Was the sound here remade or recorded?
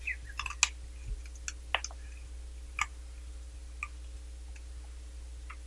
recorded